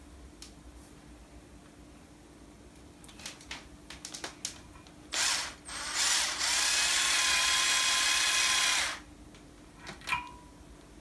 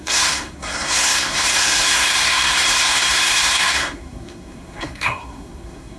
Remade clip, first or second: second